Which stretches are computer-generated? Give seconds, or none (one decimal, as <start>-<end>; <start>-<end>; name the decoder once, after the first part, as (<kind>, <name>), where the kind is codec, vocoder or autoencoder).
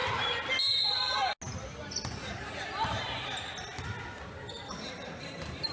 none